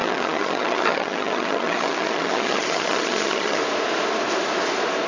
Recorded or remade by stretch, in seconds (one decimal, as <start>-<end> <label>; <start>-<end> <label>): 0.0-3.6 remade; 3.6-5.1 recorded